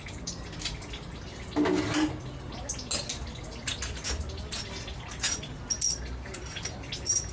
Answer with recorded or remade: recorded